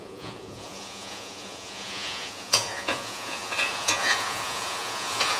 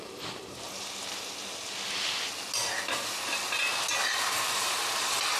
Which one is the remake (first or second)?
first